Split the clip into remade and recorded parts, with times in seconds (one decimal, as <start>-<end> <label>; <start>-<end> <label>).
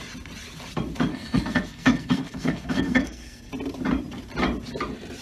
0.0-1.1 recorded; 1.1-3.5 remade; 3.5-5.2 recorded